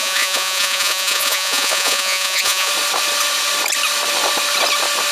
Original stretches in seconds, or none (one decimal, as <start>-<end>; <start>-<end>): 2.7-5.1